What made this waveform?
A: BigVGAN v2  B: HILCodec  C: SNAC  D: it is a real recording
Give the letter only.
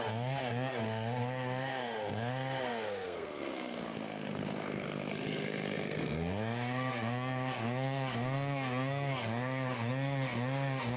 C